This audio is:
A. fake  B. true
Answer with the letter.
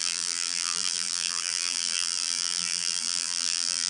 A